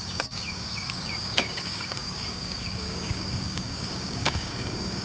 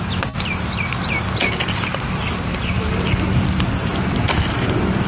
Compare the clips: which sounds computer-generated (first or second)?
first